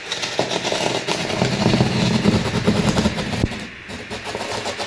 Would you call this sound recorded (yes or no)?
yes